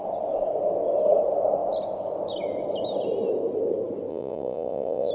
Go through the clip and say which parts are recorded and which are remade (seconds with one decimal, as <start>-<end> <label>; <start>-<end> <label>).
0.0-4.1 recorded; 4.1-5.1 remade